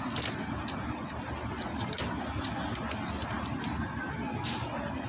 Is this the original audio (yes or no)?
yes